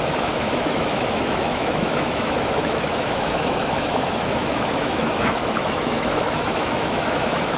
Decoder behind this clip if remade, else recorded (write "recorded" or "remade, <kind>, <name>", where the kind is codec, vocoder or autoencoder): remade, autoencoder, DAC-VAE